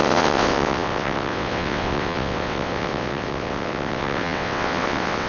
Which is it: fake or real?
fake